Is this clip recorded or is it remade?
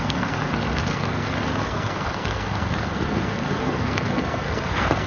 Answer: remade